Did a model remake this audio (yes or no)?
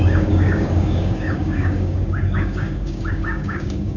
yes